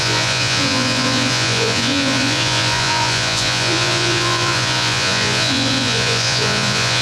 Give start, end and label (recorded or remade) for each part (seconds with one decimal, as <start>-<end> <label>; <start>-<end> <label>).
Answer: 0.0-7.0 remade